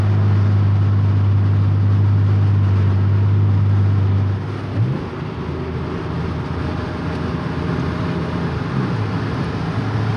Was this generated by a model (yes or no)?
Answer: no